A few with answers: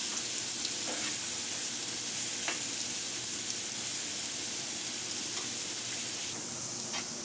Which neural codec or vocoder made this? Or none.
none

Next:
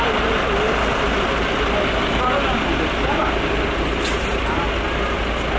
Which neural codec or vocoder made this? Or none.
none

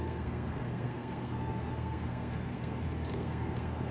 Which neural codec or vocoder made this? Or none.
codec, SNAC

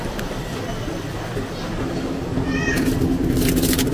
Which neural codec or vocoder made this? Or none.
none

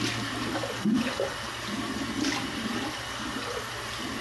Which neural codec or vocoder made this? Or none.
none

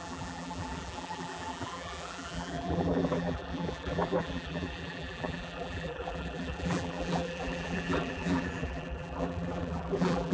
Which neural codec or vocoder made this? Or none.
vocoder, BigVGAN v2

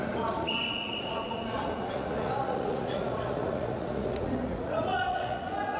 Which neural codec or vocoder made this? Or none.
vocoder, Vocos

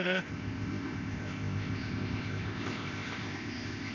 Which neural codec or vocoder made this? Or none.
codec, ZipCodec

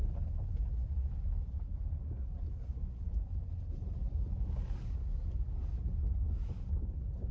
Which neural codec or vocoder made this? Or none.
none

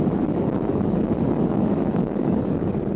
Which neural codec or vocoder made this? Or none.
codec, DAC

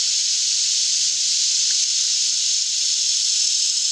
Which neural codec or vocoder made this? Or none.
none